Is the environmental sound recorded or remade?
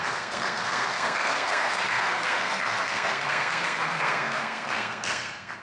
remade